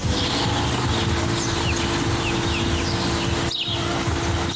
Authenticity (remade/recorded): recorded